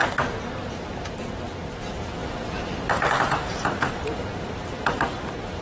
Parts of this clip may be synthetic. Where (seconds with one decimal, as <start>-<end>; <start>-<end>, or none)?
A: 1.8-2.2; 2.9-5.6